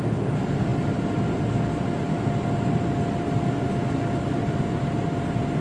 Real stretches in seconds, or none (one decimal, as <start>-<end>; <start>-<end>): 0.0-5.6